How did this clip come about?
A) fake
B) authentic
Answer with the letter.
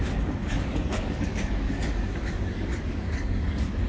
A